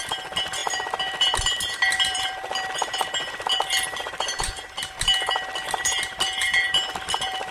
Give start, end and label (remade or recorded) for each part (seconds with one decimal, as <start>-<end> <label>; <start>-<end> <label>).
0.0-7.5 remade